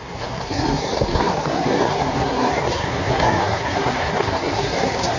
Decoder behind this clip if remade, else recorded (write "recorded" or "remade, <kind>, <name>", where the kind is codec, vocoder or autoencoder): remade, codec, SNAC